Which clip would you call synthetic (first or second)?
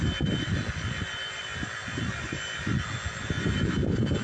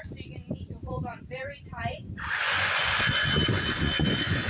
second